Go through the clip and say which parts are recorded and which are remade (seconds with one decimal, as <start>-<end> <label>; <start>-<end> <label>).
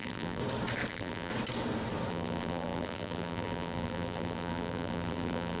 0.0-0.4 remade; 0.4-0.9 recorded; 0.9-1.3 remade; 1.3-2.1 recorded; 2.1-5.6 remade